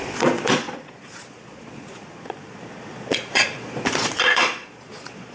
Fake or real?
fake